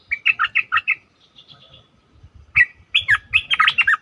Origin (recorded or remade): recorded